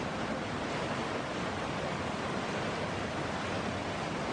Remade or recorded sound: recorded